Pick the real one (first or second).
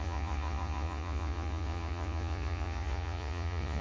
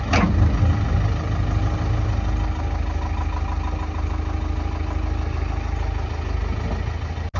second